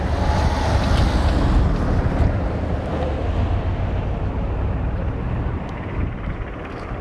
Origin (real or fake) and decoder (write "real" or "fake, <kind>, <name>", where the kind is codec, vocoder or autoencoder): real